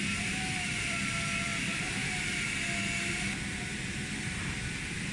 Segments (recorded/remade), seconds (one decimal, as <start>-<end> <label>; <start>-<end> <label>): 0.0-2.0 remade; 2.0-4.1 recorded; 4.1-5.1 remade